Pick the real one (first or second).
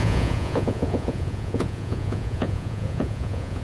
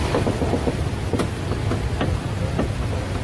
second